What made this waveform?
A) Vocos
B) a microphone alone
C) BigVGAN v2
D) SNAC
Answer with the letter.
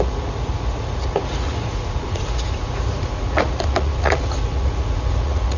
A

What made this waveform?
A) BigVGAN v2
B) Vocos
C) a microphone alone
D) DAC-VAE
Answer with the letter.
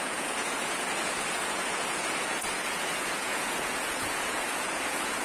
B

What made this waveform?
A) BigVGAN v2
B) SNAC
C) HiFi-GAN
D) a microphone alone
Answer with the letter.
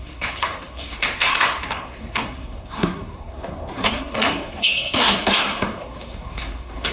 B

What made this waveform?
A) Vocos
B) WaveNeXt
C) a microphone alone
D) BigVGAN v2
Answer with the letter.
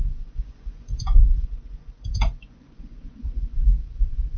A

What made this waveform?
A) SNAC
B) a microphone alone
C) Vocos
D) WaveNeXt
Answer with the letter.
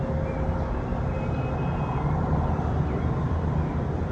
B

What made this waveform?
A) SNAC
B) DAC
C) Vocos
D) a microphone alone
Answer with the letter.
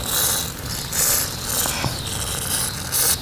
D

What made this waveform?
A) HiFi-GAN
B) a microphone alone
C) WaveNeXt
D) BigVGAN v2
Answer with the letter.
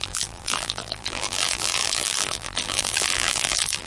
D